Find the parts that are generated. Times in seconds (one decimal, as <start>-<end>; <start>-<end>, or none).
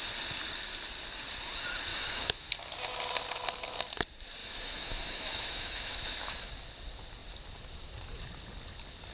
1.9-2.5; 4.4-6.5